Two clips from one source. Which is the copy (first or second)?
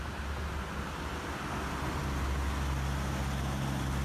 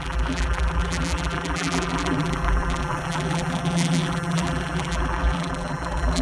second